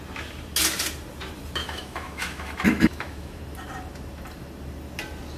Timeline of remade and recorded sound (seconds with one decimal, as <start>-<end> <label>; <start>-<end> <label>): 0.0-1.6 recorded; 1.6-3.4 remade; 3.4-5.4 recorded

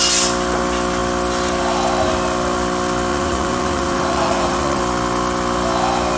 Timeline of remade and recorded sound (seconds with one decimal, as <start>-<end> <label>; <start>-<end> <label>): 0.0-3.1 recorded; 3.1-4.8 remade; 4.8-6.2 recorded

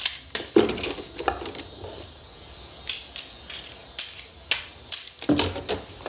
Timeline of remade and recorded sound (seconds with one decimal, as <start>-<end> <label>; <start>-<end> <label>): 0.0-6.1 recorded

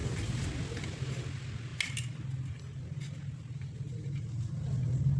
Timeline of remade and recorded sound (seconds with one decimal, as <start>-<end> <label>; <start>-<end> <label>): 0.0-5.2 recorded

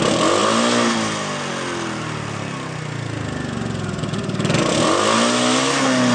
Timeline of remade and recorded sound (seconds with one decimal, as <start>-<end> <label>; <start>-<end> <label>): 0.0-6.1 recorded

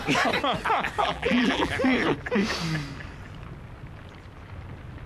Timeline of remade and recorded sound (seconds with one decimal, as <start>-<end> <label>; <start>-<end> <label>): 0.0-1.0 recorded; 1.0-1.7 remade; 1.7-5.1 recorded